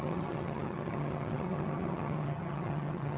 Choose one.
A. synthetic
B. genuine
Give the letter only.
A